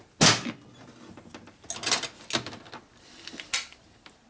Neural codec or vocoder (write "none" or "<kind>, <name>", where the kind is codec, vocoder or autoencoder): none